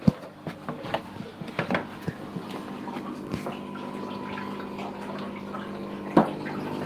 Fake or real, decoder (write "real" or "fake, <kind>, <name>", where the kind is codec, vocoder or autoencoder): real